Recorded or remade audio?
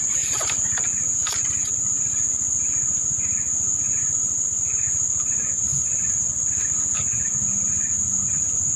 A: recorded